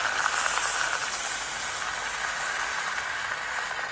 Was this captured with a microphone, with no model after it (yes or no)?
yes